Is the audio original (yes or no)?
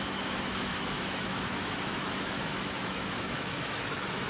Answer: no